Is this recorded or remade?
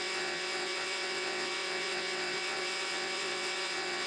remade